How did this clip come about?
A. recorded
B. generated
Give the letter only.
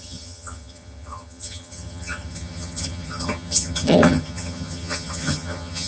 B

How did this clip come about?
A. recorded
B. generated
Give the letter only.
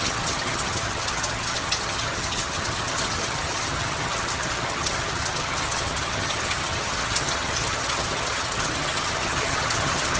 B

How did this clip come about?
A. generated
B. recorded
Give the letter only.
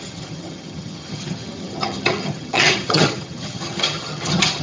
A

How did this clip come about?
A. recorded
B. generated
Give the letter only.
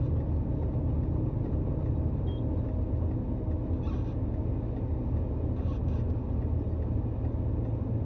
A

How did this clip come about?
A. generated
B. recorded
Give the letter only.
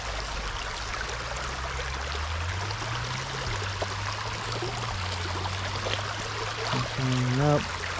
B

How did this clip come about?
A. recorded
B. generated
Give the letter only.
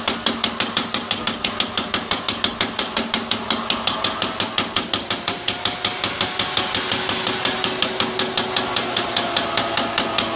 A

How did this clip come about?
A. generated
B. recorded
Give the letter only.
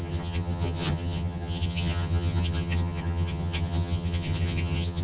A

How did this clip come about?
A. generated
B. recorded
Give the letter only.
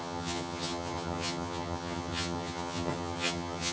A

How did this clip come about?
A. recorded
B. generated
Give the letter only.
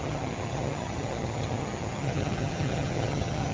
B